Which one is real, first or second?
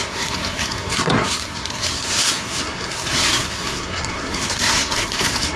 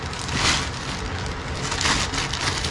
second